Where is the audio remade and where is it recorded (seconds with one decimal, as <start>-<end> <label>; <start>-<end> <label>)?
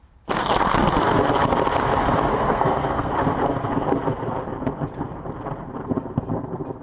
0.0-2.3 recorded; 2.3-3.1 remade; 3.1-6.8 recorded